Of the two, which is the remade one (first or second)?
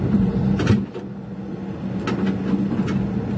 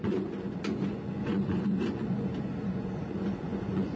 second